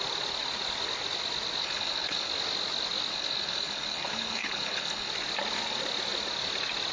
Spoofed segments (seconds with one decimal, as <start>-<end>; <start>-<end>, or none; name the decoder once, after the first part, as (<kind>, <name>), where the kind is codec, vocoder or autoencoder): 1.6-2.3 (codec, HILCodec); 3.1-5.1